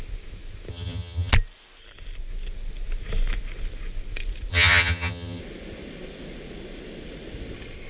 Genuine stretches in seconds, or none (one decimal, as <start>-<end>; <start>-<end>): 0.0-0.7; 1.3-4.5; 5.4-7.9